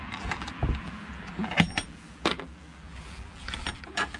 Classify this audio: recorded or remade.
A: remade